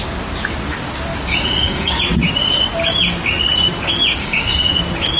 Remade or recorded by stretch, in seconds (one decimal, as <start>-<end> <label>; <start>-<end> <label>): 0.0-1.3 recorded; 1.3-2.0 remade; 2.0-4.2 recorded; 4.2-4.7 remade; 4.7-5.2 recorded